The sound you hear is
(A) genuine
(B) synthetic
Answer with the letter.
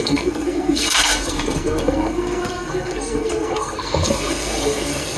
B